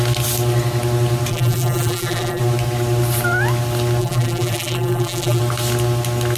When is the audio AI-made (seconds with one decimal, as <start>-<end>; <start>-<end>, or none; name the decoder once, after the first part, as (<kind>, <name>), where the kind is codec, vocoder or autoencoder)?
1.3-2.4 (vocoder, BigVGAN v2); 4.0-5.4